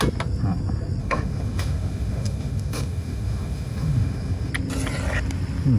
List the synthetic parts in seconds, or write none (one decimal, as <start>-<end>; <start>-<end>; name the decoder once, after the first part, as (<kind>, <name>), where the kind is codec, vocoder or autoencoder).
1.0-4.5 (autoencoder, DAC-VAE)

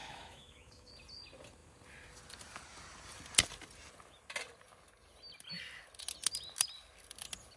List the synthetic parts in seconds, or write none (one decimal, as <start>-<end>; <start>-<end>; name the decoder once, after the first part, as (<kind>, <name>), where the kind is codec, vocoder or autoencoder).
0.0-0.9 (autoencoder, DAC-VAE)

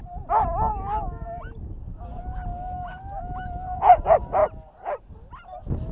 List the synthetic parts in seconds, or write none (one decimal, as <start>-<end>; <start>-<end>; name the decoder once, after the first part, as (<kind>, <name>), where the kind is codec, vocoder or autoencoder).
0.7-1.4 (autoencoder, DAC-VAE); 2.5-3.8